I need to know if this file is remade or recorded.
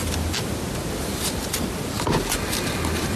recorded